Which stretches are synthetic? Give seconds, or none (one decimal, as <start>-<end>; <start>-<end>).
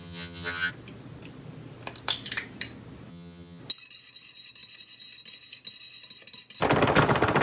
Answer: 0.0-0.7; 3.1-3.6